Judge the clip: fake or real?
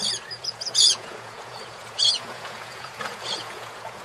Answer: fake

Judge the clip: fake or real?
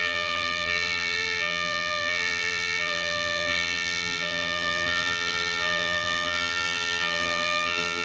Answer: fake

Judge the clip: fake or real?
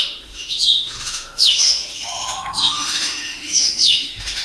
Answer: fake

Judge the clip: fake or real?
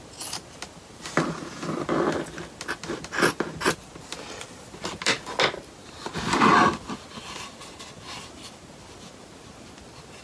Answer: real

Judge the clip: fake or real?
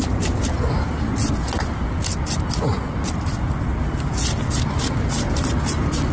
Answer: real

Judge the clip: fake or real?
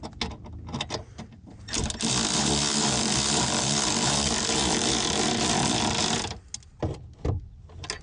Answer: real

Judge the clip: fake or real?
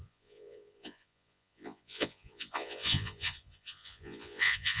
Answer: fake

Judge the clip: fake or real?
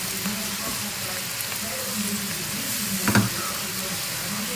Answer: real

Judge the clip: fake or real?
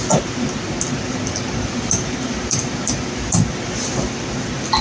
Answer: real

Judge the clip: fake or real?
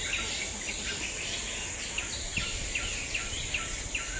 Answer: real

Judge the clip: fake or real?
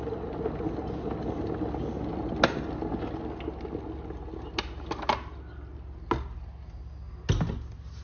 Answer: real